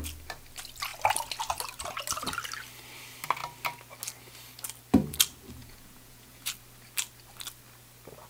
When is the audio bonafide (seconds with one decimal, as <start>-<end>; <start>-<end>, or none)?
0.0-5.6; 6.5-8.3